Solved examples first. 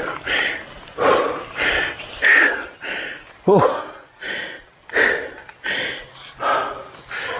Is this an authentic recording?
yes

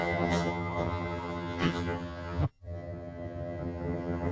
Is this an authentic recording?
no